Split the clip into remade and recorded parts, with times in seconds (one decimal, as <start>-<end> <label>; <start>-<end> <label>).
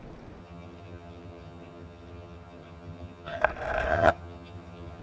0.0-0.4 recorded; 0.4-3.4 remade; 3.4-3.9 recorded; 3.9-5.0 remade